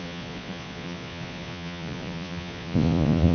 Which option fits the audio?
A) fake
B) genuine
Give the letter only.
A